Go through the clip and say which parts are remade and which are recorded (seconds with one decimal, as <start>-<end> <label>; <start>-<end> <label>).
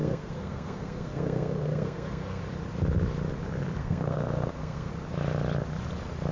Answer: 0.0-2.4 remade; 2.4-3.8 recorded; 3.8-4.9 remade; 4.9-6.3 recorded